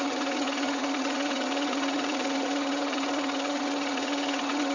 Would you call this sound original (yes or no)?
no